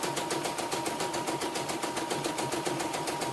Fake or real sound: fake